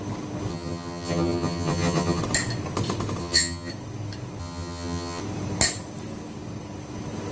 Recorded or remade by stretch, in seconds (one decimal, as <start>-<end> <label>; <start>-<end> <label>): 0.0-0.5 recorded; 0.5-2.2 remade; 2.2-3.2 recorded; 3.2-3.7 remade; 3.7-4.4 recorded; 4.4-5.2 remade; 5.2-7.3 recorded